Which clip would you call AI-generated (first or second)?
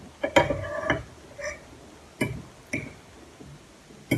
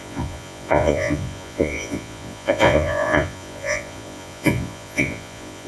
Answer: second